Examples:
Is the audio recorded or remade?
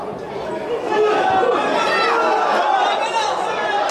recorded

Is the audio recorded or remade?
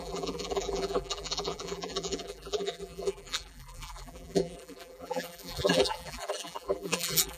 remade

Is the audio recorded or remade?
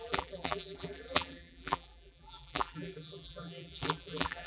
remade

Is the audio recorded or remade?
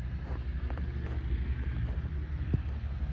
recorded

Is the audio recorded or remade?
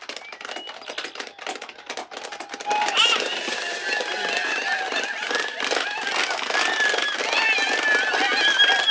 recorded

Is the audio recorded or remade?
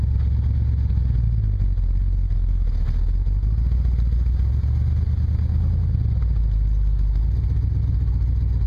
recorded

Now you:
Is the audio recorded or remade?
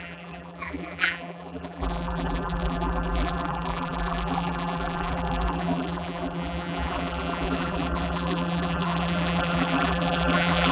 remade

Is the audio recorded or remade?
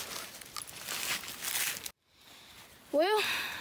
recorded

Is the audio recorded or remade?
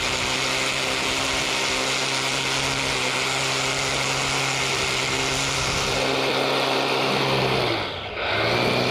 recorded